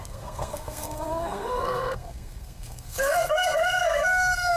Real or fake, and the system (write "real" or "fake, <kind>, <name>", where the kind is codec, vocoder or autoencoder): fake, codec, SNAC